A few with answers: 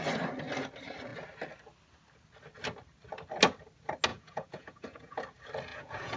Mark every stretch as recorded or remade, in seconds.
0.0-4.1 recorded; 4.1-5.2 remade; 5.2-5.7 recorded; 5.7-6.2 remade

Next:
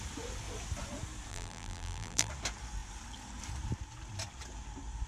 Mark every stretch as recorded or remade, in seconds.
0.0-1.3 recorded; 1.3-2.3 remade; 2.3-5.1 recorded

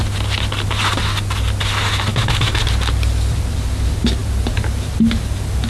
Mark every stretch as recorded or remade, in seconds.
0.0-2.1 recorded; 2.1-2.6 remade; 2.6-5.7 recorded

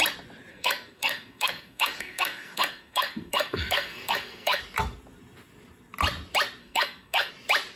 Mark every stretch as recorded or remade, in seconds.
0.0-0.5 recorded; 0.5-4.6 remade; 4.6-6.6 recorded; 6.6-7.3 remade; 7.3-7.8 recorded

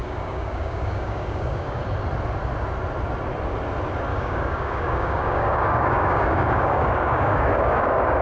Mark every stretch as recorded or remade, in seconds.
0.0-1.8 remade; 1.8-4.1 recorded; 4.1-8.2 remade

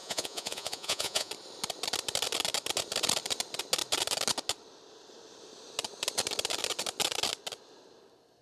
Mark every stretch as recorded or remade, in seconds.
0.0-1.3 remade; 1.3-8.4 recorded

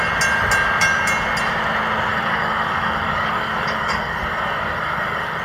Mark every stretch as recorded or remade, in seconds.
0.0-2.1 recorded; 2.1-5.4 remade

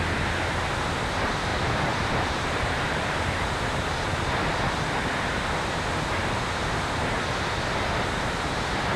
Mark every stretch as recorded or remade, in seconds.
0.0-1.5 recorded; 1.5-3.5 remade; 3.5-9.0 recorded